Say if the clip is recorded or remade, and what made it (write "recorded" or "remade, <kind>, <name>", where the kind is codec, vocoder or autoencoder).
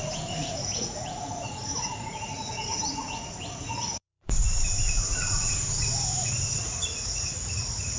remade, vocoder, Vocos